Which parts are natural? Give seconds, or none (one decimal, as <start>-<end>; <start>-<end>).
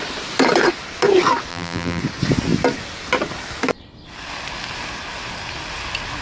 0.0-1.5; 2.0-6.2